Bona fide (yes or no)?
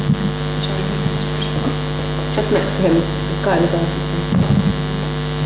yes